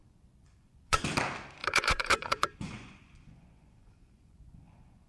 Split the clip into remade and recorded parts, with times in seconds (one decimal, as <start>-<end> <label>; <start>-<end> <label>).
0.0-1.0 remade; 1.0-1.6 recorded; 1.6-5.1 remade